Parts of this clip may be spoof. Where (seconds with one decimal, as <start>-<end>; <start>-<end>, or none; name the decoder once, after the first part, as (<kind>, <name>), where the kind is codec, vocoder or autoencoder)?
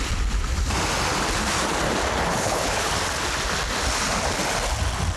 2.3-2.9 (codec, HILCodec)